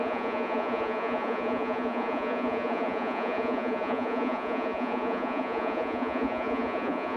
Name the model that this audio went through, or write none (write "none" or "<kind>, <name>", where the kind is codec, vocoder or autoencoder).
vocoder, Vocos